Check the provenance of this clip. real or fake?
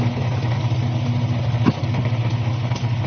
real